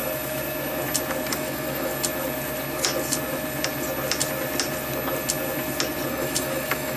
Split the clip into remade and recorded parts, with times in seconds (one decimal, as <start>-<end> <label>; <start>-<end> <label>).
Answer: 0.0-1.3 recorded; 1.3-1.9 remade; 1.9-6.1 recorded; 6.1-7.0 remade